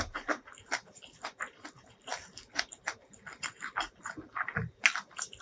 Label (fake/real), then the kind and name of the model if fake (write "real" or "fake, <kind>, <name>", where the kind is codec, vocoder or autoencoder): fake, vocoder, BigVGAN v2